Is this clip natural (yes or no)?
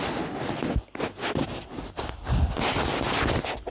yes